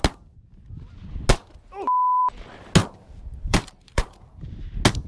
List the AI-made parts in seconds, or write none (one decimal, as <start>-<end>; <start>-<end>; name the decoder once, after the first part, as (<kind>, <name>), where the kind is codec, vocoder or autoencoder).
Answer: 2.8-4.2 (vocoder, BigVGAN v2)